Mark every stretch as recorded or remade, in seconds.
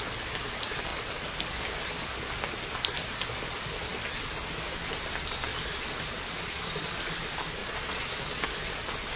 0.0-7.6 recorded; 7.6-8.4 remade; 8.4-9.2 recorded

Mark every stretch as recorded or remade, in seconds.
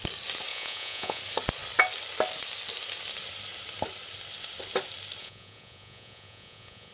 0.0-0.5 recorded; 0.5-1.2 remade; 1.2-5.2 recorded; 5.2-6.9 remade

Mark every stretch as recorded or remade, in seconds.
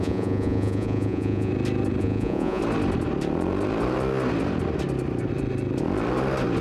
0.0-1.5 remade; 1.5-2.0 recorded; 2.0-2.6 remade; 2.6-6.6 recorded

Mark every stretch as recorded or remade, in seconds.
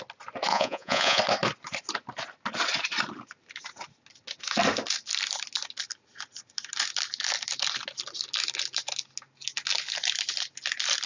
0.0-0.5 recorded; 0.5-1.2 remade; 1.2-11.1 recorded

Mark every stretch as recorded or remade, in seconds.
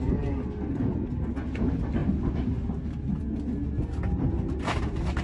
0.0-5.2 recorded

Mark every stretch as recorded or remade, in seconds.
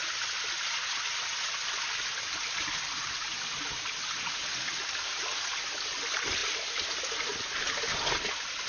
0.0-8.7 recorded